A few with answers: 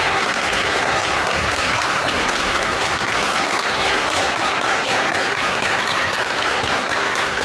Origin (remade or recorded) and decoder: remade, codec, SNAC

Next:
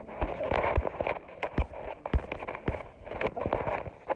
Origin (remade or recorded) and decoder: recorded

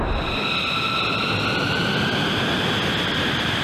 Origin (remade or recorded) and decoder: recorded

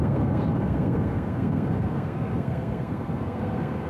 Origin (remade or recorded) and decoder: remade, codec, SNAC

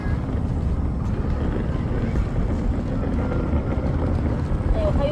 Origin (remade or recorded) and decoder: recorded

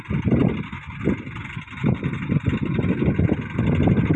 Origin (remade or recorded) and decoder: recorded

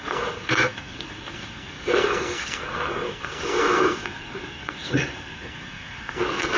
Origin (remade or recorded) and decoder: remade, codec, SNAC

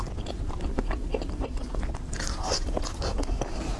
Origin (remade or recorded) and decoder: recorded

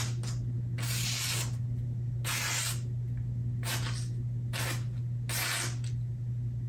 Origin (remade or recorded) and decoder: recorded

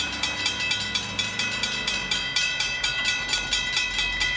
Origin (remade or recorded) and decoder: recorded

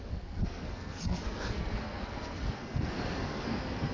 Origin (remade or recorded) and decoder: remade, codec, SNAC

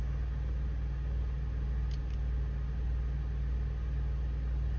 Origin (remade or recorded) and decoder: recorded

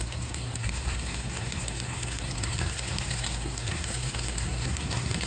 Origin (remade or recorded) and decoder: remade, codec, SNAC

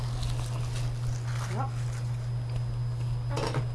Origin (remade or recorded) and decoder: recorded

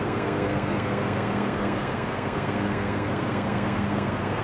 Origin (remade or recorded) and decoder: remade, codec, SNAC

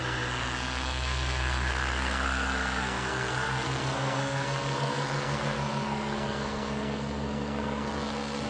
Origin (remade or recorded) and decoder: remade, codec, SNAC